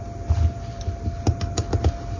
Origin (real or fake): real